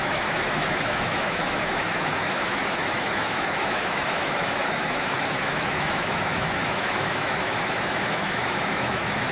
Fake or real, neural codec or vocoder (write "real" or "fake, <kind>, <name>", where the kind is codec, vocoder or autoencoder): fake, autoencoder, DAC-VAE